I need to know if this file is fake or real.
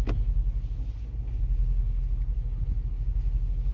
real